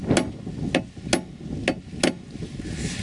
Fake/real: real